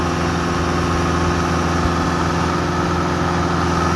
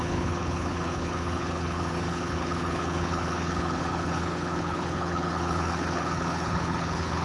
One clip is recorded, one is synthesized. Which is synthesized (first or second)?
second